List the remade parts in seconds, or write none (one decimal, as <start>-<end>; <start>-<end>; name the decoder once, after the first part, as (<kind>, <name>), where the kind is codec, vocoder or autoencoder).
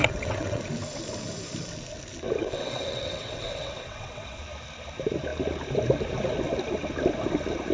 0.0-0.6 (vocoder, WaveNeXt); 2.4-4.4